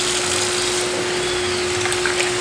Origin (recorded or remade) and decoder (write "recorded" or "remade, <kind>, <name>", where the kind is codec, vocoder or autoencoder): recorded